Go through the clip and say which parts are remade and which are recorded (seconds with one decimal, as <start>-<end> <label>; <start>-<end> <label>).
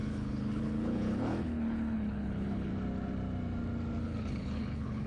0.0-2.7 remade; 2.7-4.0 recorded; 4.0-5.1 remade